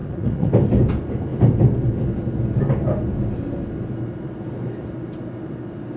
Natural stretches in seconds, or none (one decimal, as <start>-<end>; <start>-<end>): 0.5-6.0